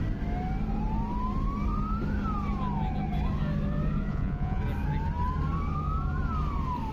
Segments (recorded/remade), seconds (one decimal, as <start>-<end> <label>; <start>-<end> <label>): 0.0-4.1 recorded; 4.1-4.6 remade; 4.6-6.9 recorded